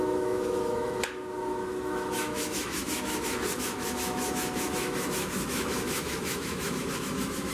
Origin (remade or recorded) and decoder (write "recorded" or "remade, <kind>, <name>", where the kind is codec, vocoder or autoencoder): remade, autoencoder, DAC-VAE